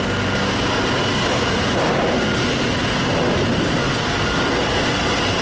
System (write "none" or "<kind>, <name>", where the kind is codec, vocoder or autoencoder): none